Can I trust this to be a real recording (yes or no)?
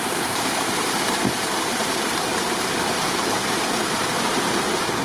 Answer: no